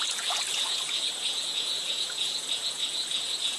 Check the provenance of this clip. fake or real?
fake